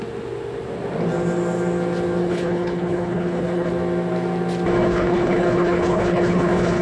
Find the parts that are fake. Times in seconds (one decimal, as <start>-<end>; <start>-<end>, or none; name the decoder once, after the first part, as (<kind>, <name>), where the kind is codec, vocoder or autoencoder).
2.2-3.7 (codec, HILCodec); 4.9-6.8